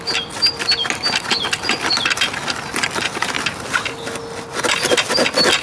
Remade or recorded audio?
recorded